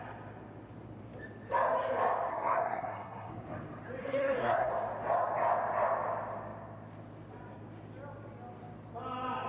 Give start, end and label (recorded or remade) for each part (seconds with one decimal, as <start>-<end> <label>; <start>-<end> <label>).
0.0-2.3 recorded; 2.3-3.3 remade; 3.3-4.0 recorded; 4.0-4.7 remade; 4.7-9.5 recorded